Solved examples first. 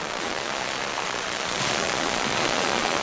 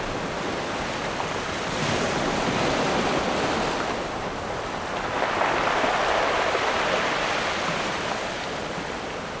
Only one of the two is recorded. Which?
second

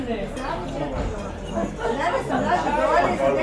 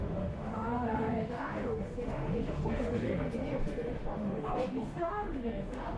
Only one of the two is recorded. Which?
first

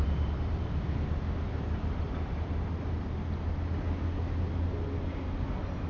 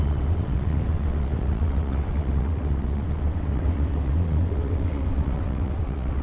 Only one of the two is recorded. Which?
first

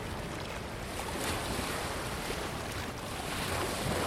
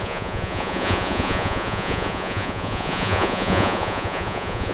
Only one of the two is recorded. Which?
first